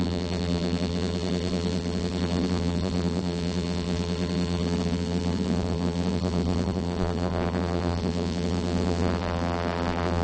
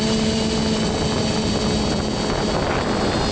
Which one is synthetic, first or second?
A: first